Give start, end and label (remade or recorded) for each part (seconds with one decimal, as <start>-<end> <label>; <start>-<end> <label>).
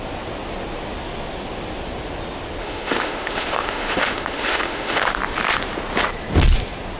0.0-2.6 recorded; 2.6-5.1 remade; 5.1-7.0 recorded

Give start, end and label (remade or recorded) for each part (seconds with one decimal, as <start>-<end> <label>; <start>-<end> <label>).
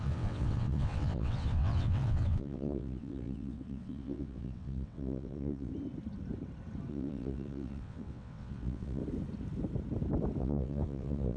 0.0-5.7 remade; 5.7-6.9 recorded; 6.9-9.0 remade; 9.0-10.4 recorded; 10.4-11.4 remade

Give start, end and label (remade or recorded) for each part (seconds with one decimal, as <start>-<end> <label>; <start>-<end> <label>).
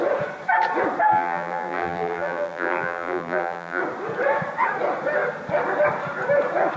0.0-1.1 recorded; 1.1-3.8 remade; 3.8-6.8 recorded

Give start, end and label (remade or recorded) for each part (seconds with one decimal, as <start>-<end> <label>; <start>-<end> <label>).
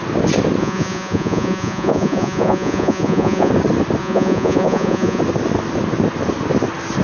0.0-0.6 recorded; 0.6-3.5 remade; 3.5-4.0 recorded; 4.0-5.2 remade; 5.2-7.0 recorded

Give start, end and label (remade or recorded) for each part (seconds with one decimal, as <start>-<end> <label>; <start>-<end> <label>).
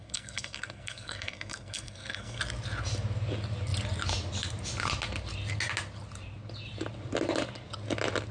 0.0-2.4 remade; 2.4-8.3 recorded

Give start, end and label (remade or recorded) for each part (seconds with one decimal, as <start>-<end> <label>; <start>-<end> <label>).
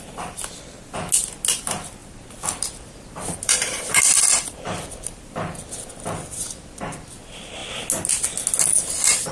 0.0-2.0 recorded; 2.0-6.8 remade; 6.8-9.3 recorded